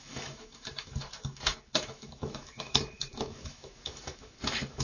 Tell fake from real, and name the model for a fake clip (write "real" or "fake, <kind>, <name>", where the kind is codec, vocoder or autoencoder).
fake, autoencoder, DAC-VAE